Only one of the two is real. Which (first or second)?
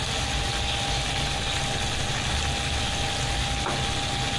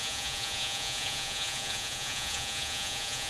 first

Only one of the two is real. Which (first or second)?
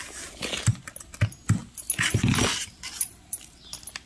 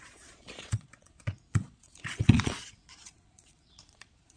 first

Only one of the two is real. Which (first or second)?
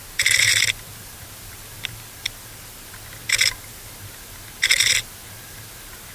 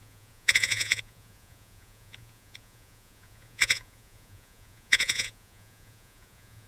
first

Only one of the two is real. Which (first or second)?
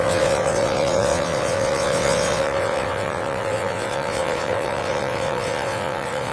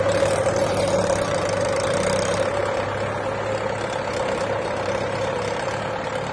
second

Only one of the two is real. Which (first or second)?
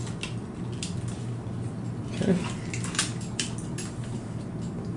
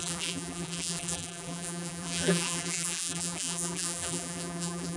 first